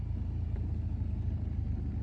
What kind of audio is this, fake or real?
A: real